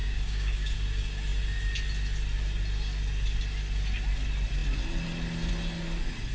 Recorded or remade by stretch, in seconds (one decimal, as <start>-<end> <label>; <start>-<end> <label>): 0.0-0.7 remade; 0.7-6.3 recorded